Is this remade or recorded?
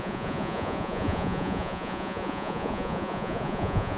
remade